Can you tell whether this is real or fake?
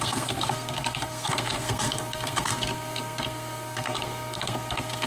fake